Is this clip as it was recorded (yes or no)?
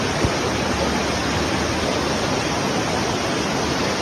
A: yes